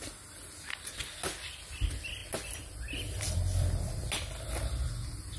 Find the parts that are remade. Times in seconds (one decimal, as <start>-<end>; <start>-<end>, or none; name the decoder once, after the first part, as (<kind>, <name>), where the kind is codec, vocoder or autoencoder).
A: none